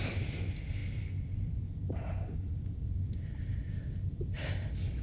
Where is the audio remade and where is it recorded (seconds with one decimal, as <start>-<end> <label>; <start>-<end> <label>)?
0.0-5.0 recorded